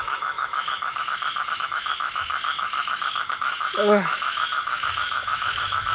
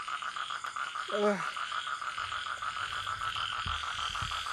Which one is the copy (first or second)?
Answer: first